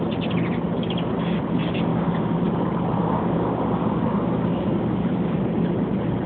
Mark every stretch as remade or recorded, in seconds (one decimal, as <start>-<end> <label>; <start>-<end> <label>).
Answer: 0.0-1.9 recorded; 1.9-2.4 remade; 2.4-3.0 recorded; 3.0-5.7 remade; 5.7-6.3 recorded